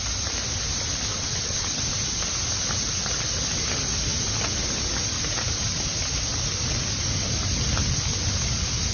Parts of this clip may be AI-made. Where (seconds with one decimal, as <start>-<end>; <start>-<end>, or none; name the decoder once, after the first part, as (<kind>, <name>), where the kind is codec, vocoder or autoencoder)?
1.1-1.8 (vocoder, WaveNeXt)